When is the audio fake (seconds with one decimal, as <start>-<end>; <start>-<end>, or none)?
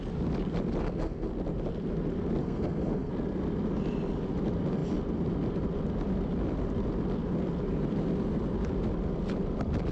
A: 0.8-1.3; 2.4-3.1